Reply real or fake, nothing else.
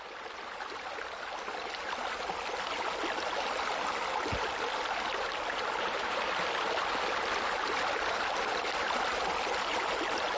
real